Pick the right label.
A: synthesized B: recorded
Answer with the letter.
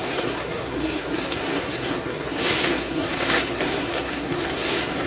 A